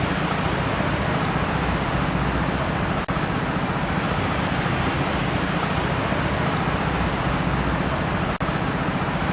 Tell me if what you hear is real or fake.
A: real